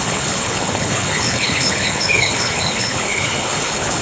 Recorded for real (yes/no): no